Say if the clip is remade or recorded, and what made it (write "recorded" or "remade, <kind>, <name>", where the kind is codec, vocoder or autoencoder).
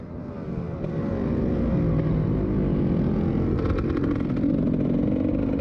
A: recorded